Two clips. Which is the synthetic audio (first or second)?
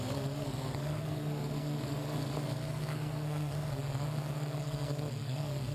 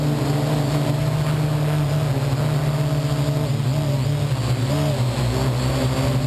first